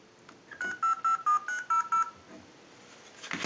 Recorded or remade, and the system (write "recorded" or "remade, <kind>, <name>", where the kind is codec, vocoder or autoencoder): recorded